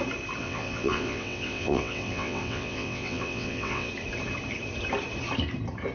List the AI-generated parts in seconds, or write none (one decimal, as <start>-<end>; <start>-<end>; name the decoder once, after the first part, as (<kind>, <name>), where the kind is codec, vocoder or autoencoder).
0.4-3.9 (vocoder, WaveNeXt)